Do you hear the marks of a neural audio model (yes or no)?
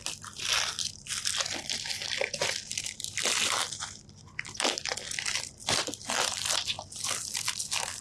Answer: yes